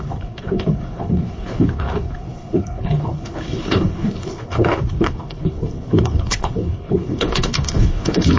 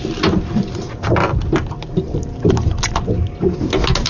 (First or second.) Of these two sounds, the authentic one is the second